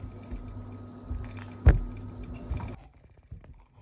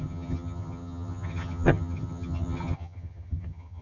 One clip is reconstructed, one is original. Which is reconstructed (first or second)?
second